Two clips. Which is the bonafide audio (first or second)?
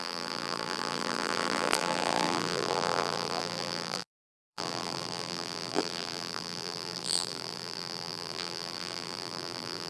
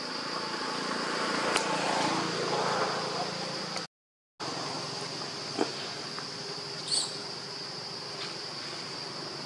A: second